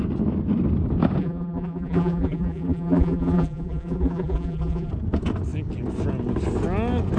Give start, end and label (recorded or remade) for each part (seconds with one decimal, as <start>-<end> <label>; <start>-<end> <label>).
0.0-1.2 recorded; 1.2-4.9 remade; 4.9-7.2 recorded